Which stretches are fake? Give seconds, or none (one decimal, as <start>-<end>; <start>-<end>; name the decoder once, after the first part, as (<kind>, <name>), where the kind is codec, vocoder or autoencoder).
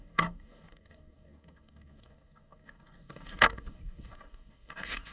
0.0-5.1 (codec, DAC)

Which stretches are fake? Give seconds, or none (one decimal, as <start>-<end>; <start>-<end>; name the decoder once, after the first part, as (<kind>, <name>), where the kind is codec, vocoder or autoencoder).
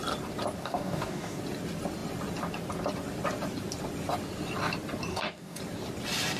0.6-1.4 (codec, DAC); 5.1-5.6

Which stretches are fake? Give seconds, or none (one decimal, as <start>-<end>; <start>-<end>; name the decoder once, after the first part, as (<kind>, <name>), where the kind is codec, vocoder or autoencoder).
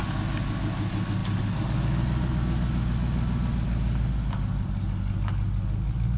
none